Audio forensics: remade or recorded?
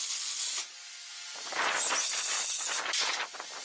recorded